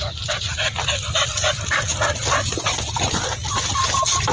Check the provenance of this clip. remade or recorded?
recorded